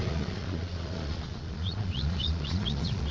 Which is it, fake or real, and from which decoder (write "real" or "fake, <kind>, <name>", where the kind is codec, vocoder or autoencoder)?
fake, vocoder, Vocos